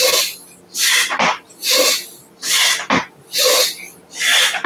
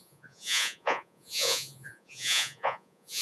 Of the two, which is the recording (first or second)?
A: first